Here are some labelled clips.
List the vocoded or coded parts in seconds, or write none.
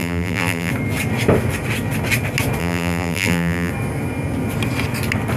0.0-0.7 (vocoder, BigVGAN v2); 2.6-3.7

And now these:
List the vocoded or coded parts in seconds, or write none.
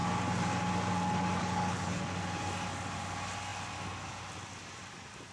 1.4-2.0 (codec, HILCodec)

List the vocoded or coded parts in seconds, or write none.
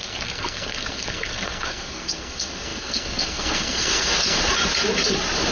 0.0-4.4 (codec, SNAC)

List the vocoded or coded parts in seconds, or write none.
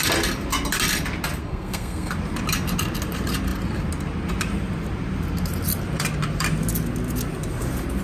1.4-2.1 (codec, SNAC)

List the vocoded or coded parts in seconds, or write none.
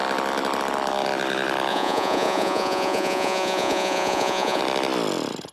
1.7-4.6 (vocoder, Vocos)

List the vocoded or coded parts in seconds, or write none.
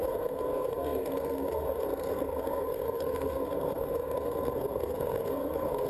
0.0-5.9 (codec, SNAC)